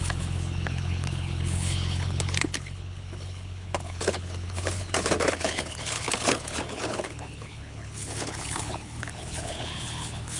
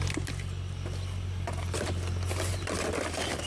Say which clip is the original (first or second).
second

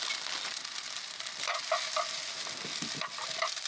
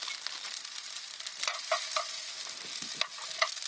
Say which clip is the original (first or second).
second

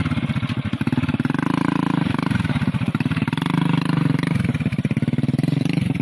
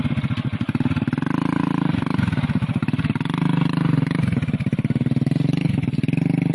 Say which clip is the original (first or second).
second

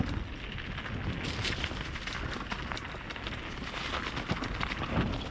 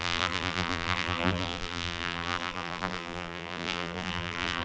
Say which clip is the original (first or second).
first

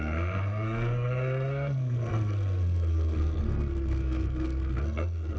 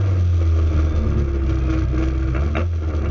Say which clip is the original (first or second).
second